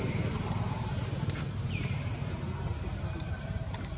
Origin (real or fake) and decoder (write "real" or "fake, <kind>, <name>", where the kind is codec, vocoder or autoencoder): fake, vocoder, BigVGAN v2